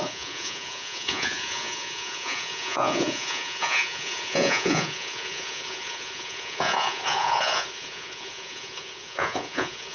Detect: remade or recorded remade